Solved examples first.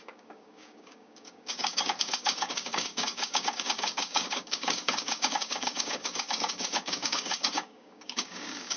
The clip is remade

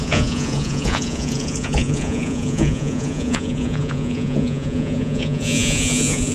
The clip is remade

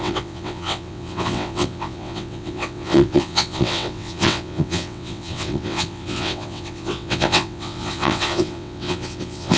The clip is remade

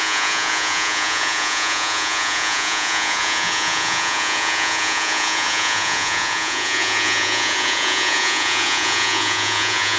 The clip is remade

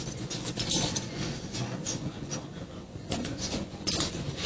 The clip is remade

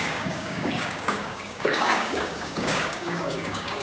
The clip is remade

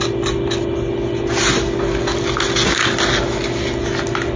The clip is recorded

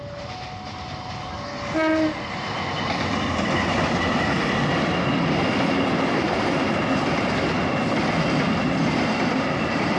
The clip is recorded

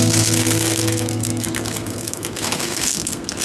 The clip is remade